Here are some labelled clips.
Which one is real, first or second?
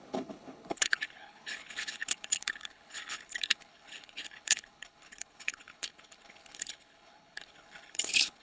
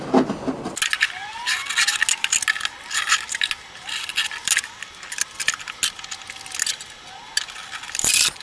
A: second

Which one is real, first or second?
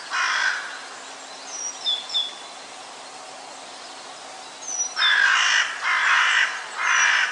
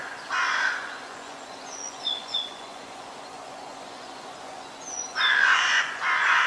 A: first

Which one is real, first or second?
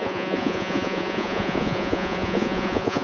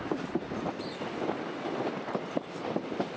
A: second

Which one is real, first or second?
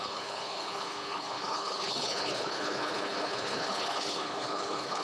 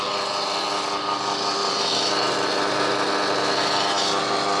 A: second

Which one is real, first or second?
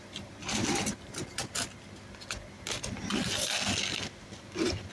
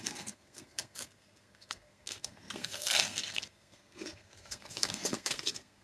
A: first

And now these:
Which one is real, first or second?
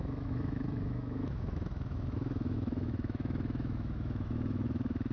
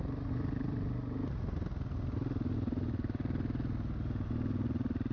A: second